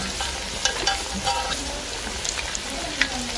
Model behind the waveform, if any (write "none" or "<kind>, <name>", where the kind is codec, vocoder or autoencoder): none